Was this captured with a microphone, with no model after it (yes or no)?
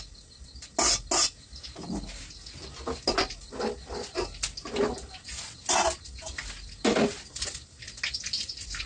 yes